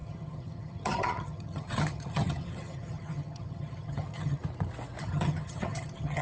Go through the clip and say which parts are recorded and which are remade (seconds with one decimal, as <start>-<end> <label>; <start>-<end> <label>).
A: 0.0-4.4 remade; 4.4-5.0 recorded; 5.0-6.2 remade